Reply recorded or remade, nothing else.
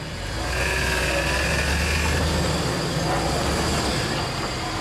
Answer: recorded